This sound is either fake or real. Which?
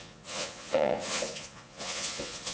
fake